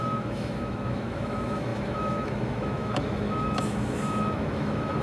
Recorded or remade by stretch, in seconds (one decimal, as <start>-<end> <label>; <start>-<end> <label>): 0.0-5.0 remade